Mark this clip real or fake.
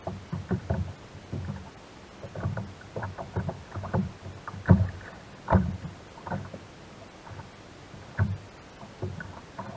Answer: real